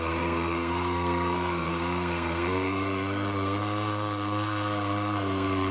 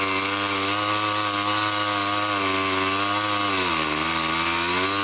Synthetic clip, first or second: first